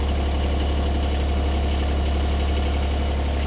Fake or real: real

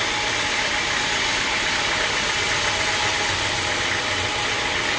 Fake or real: real